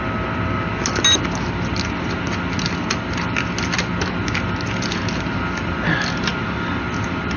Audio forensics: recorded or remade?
recorded